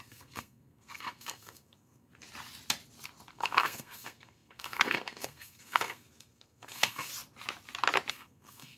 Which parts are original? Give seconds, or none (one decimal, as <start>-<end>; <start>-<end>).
2.1-3.3; 7.1-8.1